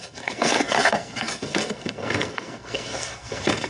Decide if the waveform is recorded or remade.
remade